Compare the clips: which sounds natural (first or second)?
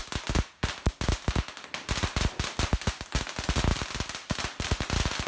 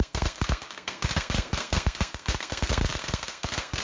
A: first